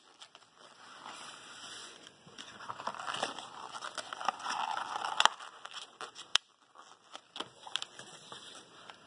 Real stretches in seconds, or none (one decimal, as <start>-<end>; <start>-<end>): 0.0-1.8; 2.7-9.1